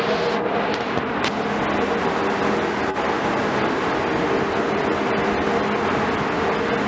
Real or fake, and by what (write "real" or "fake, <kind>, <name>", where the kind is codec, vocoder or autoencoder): real